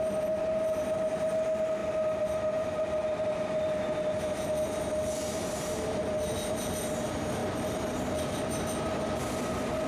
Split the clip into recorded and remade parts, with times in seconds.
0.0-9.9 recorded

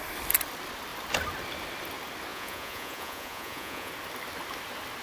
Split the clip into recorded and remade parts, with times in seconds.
0.0-2.3 recorded; 2.3-3.9 remade; 3.9-5.0 recorded

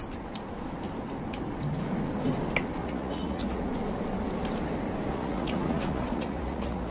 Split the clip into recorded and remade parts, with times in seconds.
0.0-2.8 recorded; 2.8-3.7 remade; 3.7-5.1 recorded; 5.1-6.9 remade